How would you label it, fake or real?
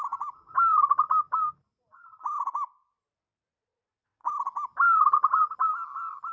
real